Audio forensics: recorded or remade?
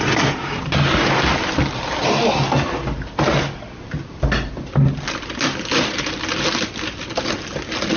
recorded